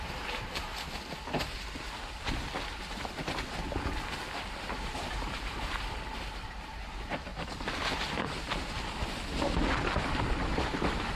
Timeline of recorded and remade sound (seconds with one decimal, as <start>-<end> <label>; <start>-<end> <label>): 0.0-0.7 remade; 0.7-4.7 recorded; 4.7-7.3 remade; 7.3-10.5 recorded; 10.5-11.2 remade